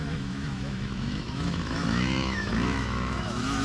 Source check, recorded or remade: remade